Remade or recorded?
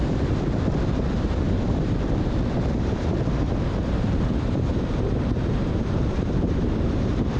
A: remade